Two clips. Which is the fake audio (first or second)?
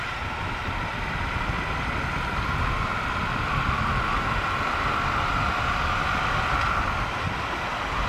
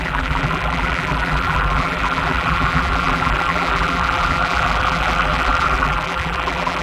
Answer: second